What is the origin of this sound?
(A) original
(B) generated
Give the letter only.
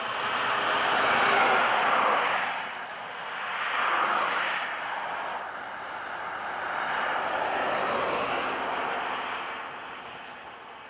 A